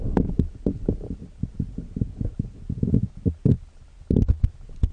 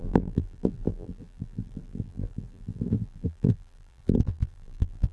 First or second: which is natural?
first